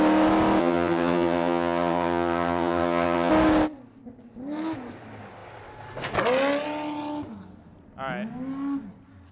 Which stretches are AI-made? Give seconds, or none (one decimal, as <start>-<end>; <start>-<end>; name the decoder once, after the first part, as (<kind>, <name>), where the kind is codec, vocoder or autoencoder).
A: 0.6-3.3 (vocoder, HiFi-GAN)